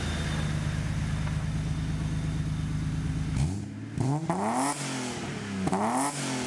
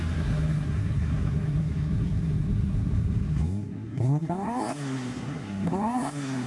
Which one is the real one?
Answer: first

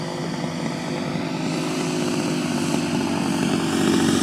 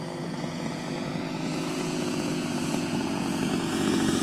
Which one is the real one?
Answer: first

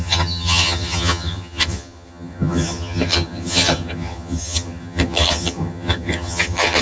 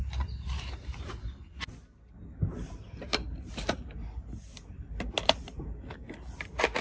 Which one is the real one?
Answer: second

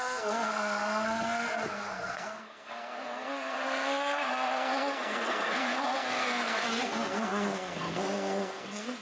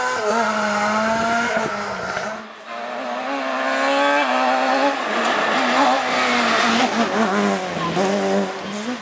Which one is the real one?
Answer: second